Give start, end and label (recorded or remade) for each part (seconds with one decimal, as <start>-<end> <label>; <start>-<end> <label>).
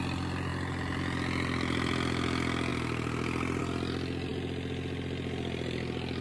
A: 0.0-6.2 recorded